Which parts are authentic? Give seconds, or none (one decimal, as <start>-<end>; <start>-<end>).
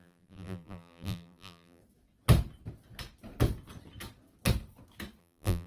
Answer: 1.8-5.2